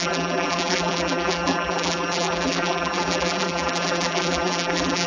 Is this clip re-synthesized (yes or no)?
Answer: yes